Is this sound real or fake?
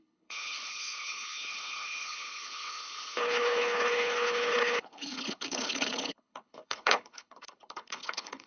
fake